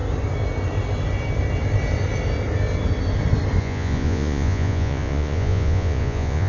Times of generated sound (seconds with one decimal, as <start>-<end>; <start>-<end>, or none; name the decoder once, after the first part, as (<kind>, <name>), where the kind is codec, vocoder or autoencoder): 3.6-6.5 (vocoder, Vocos)